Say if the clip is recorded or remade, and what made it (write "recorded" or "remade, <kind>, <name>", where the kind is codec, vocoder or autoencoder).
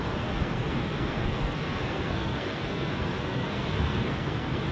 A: remade, codec, SNAC